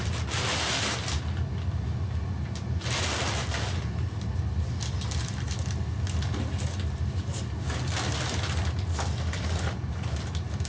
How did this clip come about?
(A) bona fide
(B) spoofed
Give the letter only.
A